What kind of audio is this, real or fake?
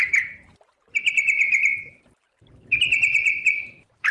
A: fake